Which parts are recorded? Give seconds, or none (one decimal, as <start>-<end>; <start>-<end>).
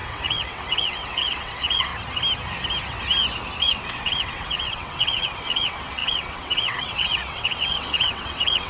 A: 1.9-3.6